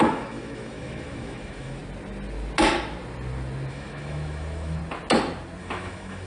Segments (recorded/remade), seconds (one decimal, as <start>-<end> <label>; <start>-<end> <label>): 0.0-1.8 remade; 1.8-3.7 recorded; 3.7-4.8 remade; 4.8-5.6 recorded; 5.6-6.3 remade